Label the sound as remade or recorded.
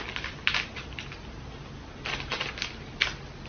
recorded